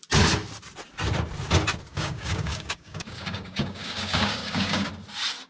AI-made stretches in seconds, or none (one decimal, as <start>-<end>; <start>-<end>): 1.9-4.9